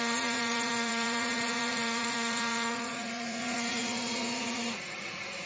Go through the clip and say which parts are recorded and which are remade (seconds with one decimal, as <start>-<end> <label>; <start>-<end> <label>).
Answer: 0.0-5.5 remade